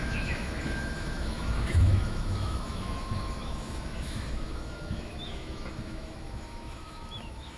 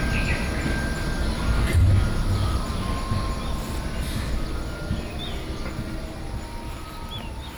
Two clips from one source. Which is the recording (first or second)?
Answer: second